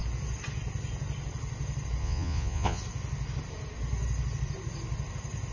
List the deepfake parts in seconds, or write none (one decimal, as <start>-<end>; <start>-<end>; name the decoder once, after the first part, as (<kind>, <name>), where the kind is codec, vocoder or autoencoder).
2.0-2.8 (vocoder, Vocos)